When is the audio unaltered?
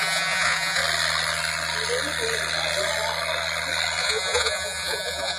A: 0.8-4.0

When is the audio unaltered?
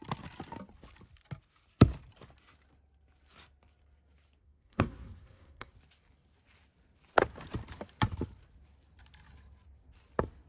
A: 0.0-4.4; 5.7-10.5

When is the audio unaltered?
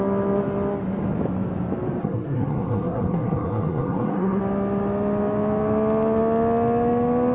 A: 0.0-2.0; 4.4-7.3